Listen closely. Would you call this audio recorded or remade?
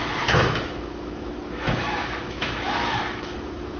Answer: remade